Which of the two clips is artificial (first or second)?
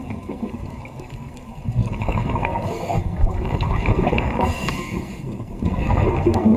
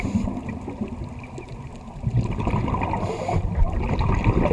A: first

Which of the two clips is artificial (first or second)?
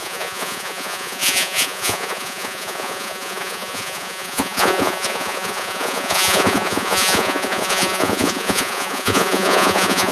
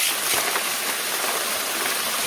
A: first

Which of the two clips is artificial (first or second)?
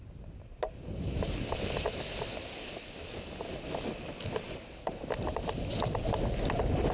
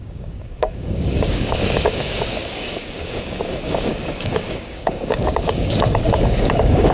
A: second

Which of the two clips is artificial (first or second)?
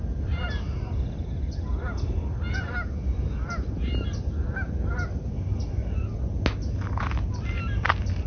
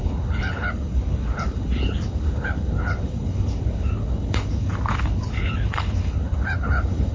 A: second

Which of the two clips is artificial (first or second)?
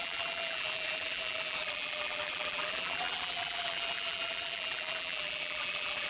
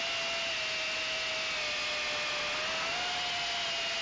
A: first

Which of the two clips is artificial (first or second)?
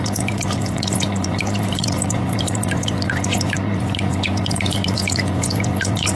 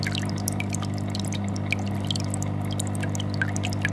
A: first